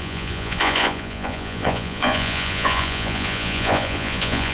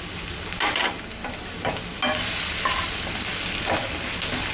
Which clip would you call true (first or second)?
second